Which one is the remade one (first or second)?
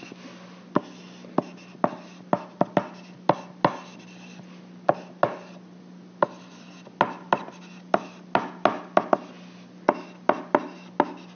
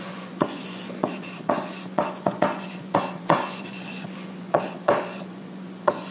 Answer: second